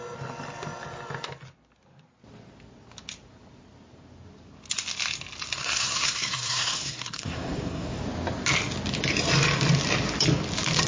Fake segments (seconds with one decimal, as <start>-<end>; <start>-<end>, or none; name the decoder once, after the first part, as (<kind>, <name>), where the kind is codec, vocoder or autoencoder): 5.6-8.0 (codec, SNAC)